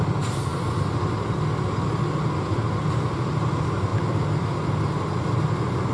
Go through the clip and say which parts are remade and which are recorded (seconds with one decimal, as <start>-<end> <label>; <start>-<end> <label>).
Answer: 0.0-5.9 recorded